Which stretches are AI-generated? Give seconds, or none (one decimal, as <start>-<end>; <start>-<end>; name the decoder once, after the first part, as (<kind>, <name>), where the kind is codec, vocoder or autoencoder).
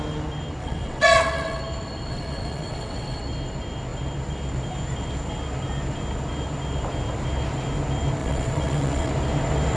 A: 0.6-1.6 (vocoder, WaveNeXt); 2.1-3.2; 8.2-9.1